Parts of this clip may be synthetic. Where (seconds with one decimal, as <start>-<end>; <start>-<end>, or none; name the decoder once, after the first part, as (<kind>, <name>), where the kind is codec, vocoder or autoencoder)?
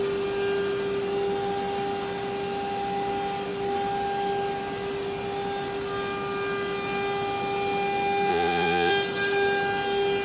8.3-8.9 (vocoder, Vocos)